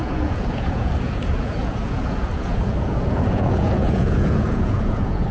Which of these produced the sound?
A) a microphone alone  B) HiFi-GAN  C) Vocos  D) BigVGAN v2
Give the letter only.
C